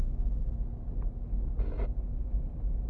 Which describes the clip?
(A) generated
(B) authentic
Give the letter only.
B